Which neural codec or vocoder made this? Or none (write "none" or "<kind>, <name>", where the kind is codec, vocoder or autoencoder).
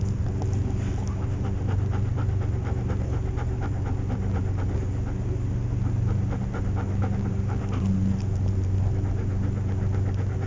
none